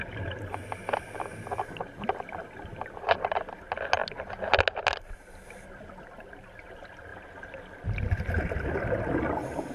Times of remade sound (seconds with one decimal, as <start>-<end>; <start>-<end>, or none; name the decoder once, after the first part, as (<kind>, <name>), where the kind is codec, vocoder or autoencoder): none